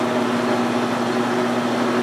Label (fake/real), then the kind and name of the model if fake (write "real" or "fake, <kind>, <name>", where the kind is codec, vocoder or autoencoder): real